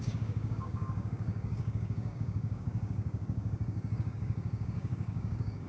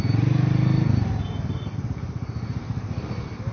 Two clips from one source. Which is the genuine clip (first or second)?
second